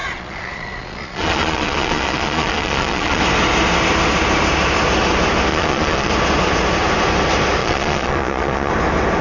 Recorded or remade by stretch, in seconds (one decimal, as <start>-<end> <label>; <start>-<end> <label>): 0.0-3.2 remade; 3.2-5.5 recorded; 5.5-6.1 remade; 6.1-7.6 recorded; 7.6-8.7 remade; 8.7-9.2 recorded